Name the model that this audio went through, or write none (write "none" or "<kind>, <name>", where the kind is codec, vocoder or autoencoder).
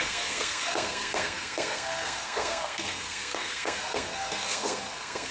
codec, SNAC